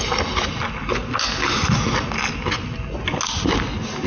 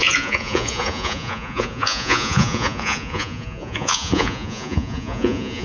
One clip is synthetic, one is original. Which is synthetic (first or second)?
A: second